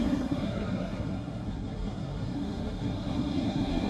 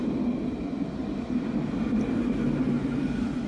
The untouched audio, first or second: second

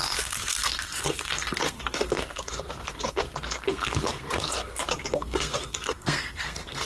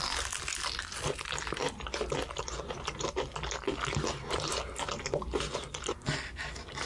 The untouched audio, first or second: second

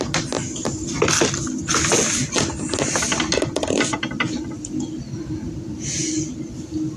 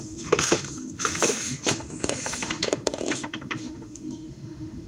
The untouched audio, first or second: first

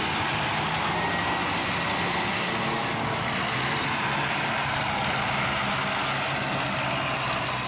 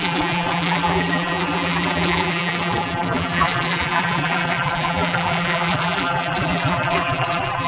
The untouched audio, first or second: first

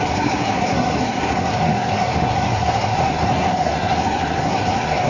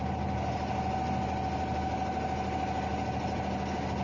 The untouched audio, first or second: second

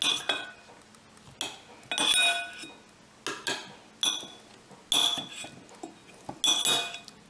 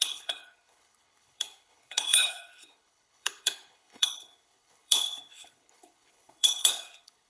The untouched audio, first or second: first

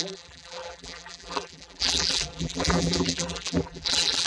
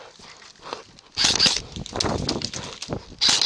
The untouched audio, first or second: second